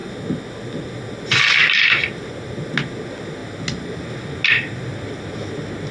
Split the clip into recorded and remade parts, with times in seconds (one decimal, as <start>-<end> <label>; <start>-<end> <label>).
0.0-5.9 recorded